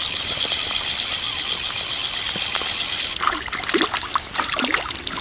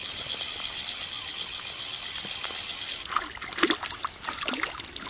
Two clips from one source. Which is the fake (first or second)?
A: first